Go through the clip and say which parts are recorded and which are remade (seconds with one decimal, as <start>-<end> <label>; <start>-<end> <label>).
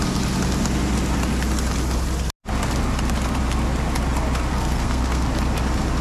0.0-4.5 recorded; 4.5-5.3 remade; 5.3-6.0 recorded